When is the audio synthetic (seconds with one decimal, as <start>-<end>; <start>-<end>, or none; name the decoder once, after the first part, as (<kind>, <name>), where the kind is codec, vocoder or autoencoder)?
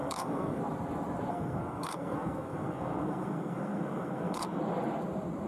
0.0-0.6 (codec, SNAC); 1.3-4.6